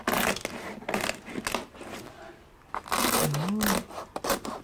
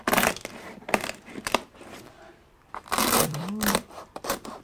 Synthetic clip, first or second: second